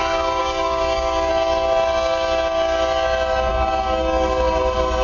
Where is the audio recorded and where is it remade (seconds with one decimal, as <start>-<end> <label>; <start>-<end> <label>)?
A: 0.0-0.4 recorded; 0.4-1.3 remade; 1.3-5.0 recorded